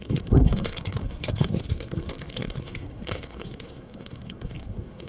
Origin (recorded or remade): remade